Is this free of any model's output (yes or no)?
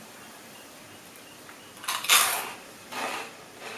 no